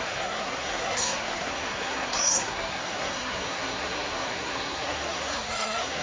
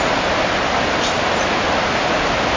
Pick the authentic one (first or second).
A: second